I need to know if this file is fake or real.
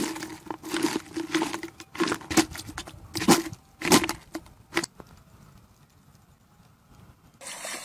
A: real